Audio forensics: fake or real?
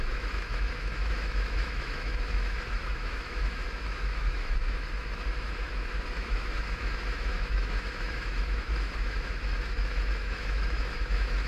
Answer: fake